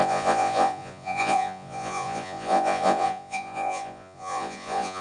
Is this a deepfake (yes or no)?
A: yes